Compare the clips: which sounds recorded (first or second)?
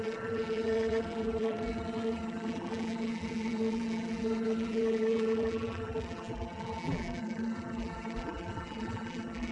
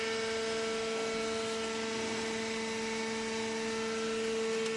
second